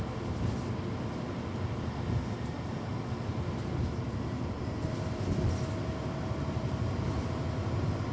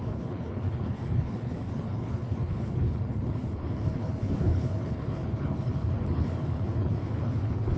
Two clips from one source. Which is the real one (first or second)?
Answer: first